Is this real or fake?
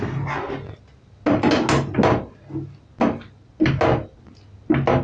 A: real